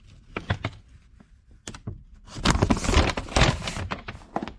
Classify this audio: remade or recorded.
recorded